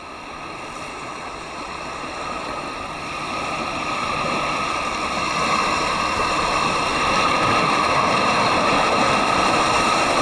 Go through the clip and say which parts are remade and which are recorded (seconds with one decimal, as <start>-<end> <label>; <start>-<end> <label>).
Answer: 0.0-0.9 recorded; 0.9-2.6 remade; 2.6-10.2 recorded